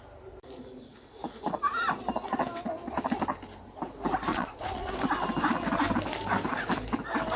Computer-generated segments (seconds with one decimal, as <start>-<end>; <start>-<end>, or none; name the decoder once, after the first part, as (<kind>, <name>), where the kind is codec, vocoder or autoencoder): 4.3-4.9 (vocoder, Vocos)